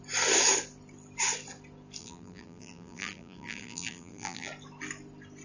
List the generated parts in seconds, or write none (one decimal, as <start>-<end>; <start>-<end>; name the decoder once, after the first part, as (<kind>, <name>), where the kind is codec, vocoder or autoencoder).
2.0-4.5 (vocoder, BigVGAN v2)